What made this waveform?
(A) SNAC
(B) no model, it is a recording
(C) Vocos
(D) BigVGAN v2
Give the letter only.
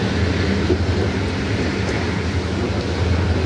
B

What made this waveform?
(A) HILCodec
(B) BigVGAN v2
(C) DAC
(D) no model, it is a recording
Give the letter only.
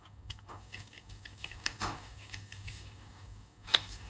C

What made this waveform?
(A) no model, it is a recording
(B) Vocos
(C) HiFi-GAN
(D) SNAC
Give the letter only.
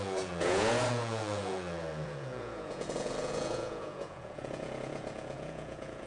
B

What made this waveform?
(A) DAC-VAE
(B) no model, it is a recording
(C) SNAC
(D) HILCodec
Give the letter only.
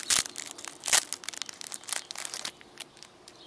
B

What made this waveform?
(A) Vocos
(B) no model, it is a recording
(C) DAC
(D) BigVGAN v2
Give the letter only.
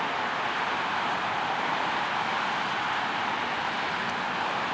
B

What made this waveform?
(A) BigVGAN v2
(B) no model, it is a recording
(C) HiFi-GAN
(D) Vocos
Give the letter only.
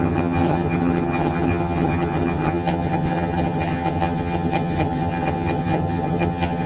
C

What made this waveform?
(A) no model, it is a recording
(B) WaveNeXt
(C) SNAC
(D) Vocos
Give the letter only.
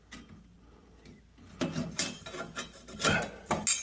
A